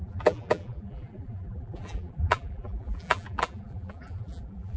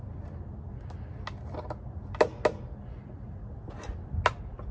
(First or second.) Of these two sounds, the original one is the second